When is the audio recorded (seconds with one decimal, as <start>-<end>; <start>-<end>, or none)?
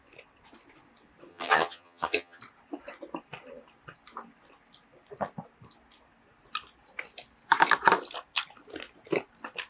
0.0-1.3; 2.4-9.7